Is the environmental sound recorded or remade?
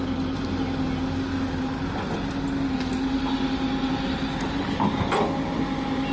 recorded